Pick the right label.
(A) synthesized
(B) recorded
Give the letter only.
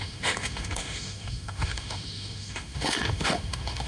A